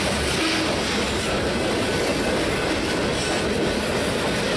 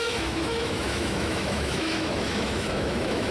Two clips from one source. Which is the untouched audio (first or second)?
first